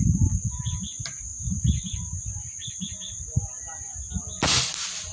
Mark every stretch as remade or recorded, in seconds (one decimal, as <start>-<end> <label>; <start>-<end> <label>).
0.0-5.1 recorded